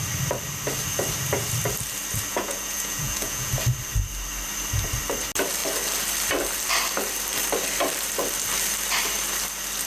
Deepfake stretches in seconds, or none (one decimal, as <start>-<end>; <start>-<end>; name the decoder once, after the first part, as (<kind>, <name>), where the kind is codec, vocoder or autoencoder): 2.3-3.5 (vocoder, Vocos)